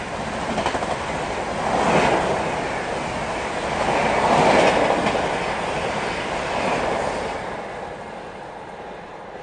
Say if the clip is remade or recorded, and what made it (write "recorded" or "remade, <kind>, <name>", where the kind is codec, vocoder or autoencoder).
recorded